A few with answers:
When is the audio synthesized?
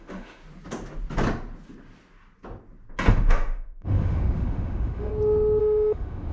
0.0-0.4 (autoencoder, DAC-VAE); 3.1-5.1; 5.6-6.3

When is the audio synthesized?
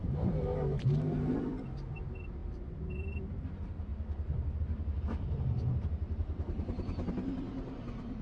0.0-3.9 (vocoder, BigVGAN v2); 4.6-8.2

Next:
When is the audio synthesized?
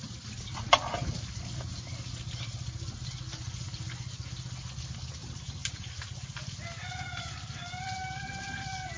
5.2-6.5 (vocoder, BigVGAN v2)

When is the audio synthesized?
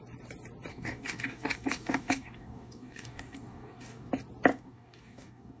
0.7-4.1 (codec, DAC); 4.5-5.6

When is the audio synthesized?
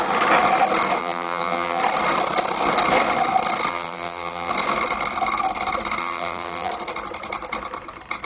1.0-1.8 (vocoder, BigVGAN v2); 3.7-4.5; 6.0-6.7